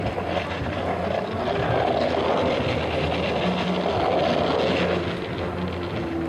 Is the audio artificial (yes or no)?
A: no